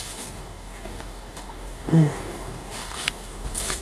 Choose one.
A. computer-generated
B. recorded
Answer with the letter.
A